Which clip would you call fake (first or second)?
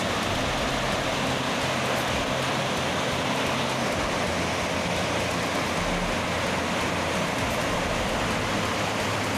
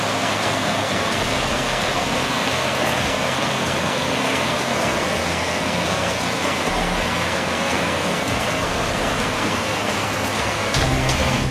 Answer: second